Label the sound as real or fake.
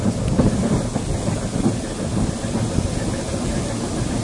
real